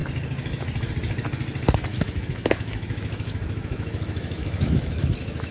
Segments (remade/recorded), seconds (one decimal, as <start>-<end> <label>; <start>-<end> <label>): 0.0-1.9 recorded; 1.9-5.5 remade